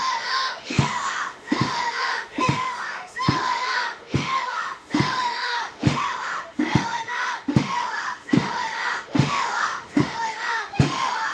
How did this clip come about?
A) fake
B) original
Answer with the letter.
A